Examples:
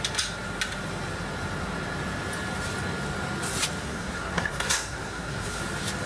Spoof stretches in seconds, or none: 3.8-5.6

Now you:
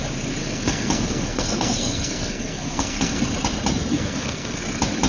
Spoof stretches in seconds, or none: 0.4-3.2; 3.9-4.6

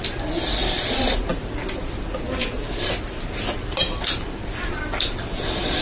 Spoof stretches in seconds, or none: none